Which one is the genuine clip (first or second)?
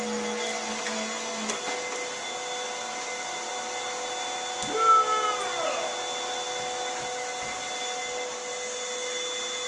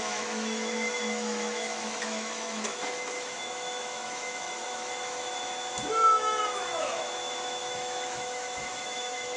first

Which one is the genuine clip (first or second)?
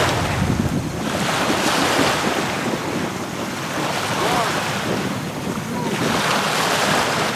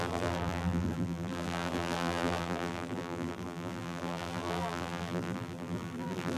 first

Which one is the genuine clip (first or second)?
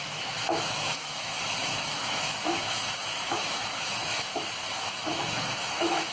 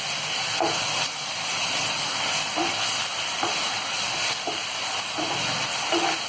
second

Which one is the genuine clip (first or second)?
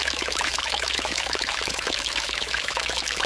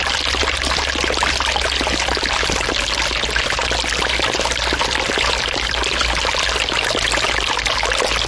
second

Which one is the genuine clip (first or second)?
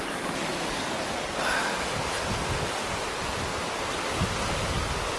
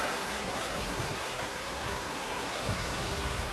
first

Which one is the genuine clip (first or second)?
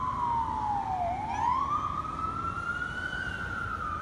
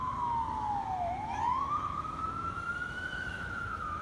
first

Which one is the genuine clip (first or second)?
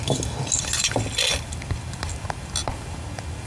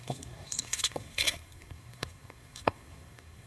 first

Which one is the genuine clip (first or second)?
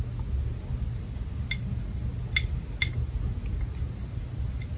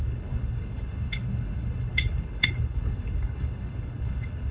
first